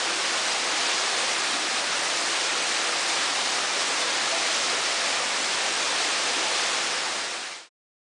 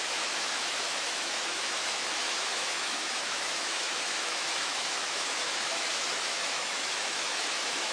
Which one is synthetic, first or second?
second